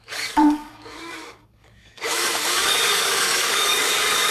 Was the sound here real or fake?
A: fake